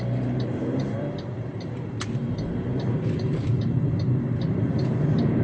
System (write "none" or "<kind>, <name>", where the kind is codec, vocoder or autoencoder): vocoder, BigVGAN v2